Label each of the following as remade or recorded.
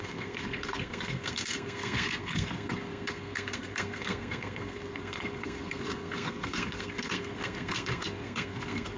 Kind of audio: remade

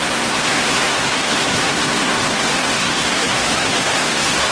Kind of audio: remade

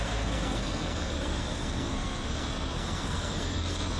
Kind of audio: remade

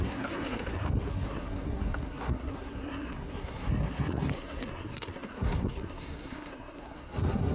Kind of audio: remade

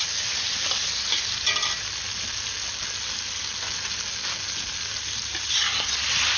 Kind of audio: recorded